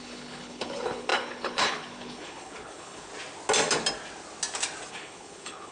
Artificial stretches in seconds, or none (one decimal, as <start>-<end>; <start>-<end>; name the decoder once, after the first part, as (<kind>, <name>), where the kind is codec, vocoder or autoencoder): 0.0-3.1 (codec, HILCodec); 4.9-5.7